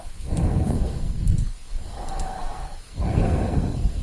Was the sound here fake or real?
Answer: fake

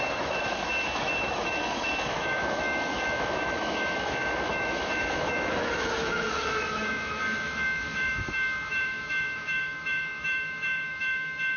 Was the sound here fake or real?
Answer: fake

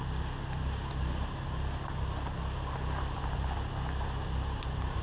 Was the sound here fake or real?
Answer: real